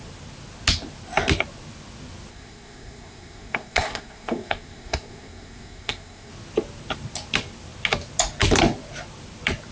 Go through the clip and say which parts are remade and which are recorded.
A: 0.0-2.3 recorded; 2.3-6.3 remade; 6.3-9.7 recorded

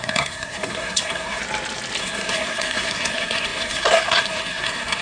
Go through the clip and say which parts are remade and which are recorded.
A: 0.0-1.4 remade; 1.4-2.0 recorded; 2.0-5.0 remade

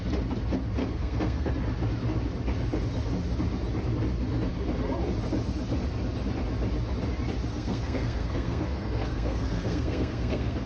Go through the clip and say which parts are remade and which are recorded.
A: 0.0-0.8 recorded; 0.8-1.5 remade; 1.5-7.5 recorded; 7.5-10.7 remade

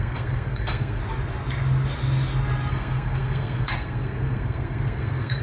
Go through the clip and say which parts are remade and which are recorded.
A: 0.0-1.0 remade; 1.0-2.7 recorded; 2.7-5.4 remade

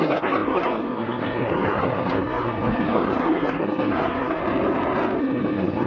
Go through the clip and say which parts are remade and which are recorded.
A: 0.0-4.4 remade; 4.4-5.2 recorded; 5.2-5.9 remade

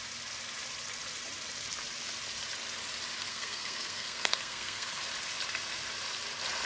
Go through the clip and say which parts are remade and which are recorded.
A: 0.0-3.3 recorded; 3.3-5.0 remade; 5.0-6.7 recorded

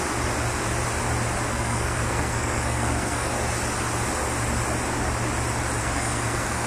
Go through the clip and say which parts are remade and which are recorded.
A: 0.0-1.5 recorded; 1.5-3.3 remade; 3.3-5.8 recorded; 5.8-6.7 remade

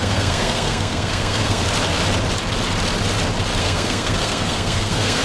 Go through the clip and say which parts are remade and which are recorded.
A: 0.0-1.6 remade; 1.6-3.6 recorded; 3.6-5.2 remade